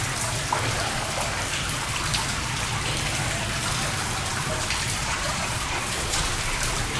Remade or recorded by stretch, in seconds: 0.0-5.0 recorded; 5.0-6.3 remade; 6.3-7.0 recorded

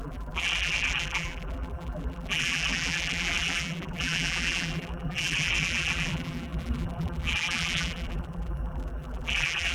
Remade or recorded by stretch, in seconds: 0.0-9.7 remade

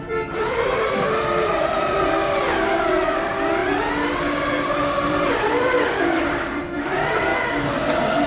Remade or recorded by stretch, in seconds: 0.0-3.6 remade; 3.6-5.1 recorded; 5.1-7.3 remade; 7.3-8.3 recorded

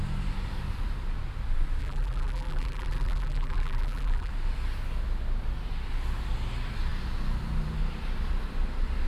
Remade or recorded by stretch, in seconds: 0.0-1.8 recorded; 1.8-4.3 remade; 4.3-9.1 recorded